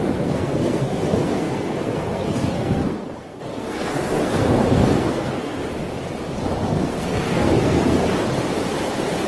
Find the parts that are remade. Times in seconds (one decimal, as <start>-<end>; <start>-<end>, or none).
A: 0.0-5.6; 6.7-8.0